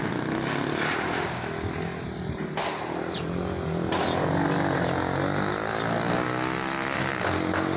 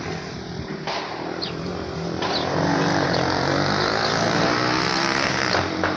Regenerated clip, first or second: second